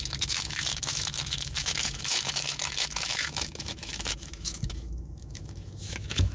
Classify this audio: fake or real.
fake